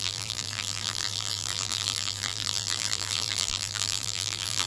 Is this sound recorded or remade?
remade